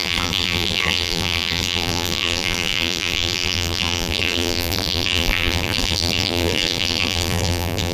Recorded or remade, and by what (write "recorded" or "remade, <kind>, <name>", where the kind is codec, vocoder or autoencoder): remade, vocoder, BigVGAN v2